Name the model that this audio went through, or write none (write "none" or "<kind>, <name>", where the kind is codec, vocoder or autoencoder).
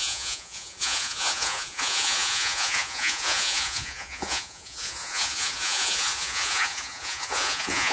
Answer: vocoder, Vocos